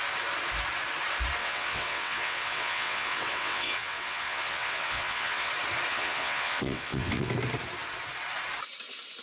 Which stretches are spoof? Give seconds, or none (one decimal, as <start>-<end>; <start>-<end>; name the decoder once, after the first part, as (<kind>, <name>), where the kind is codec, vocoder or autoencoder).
1.4-5.5 (vocoder, WaveNeXt); 5.9-7.3